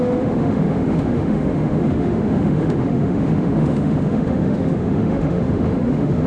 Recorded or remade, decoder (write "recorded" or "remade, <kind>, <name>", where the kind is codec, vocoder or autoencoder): remade, autoencoder, DAC-VAE